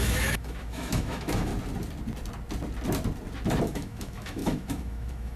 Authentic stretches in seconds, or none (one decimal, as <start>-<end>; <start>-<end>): 1.5-3.6